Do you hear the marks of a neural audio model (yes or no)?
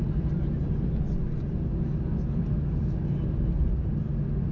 no